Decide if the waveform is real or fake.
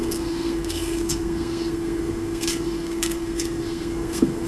fake